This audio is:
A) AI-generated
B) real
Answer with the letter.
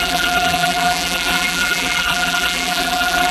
A